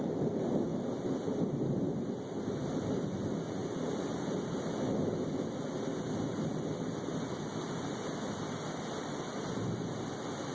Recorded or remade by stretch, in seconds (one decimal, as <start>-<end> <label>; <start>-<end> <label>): 0.0-10.5 recorded